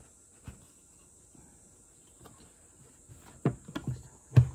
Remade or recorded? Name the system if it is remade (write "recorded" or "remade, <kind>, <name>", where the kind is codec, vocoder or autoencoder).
recorded